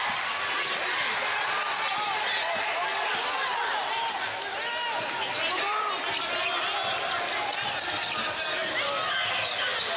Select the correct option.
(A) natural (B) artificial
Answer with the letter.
A